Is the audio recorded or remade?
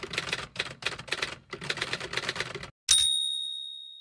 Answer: recorded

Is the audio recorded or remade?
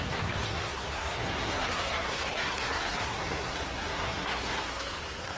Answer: remade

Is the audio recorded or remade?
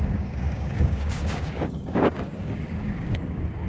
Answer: remade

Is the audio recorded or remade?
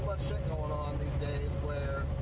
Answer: recorded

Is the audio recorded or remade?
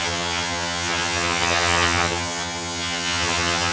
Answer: remade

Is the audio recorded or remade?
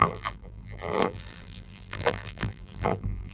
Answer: remade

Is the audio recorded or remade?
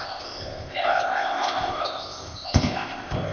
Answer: remade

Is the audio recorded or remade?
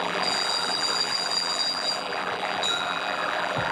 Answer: remade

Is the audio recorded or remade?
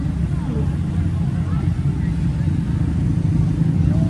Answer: recorded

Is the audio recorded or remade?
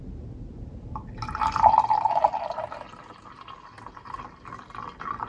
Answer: recorded